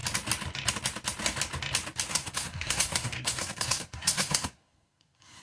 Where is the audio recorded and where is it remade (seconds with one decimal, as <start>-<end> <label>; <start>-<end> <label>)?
0.0-2.1 recorded; 2.1-5.4 remade